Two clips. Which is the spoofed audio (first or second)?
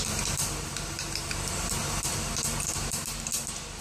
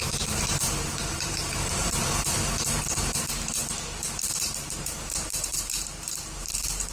second